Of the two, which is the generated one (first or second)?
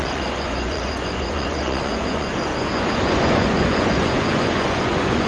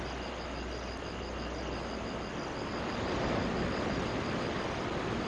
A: first